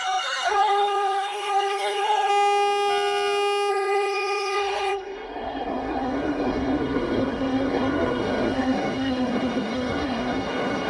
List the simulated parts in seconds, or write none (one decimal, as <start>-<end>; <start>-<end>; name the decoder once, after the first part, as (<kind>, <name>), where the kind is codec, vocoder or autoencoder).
0.0-2.3 (codec, SNAC); 3.7-10.9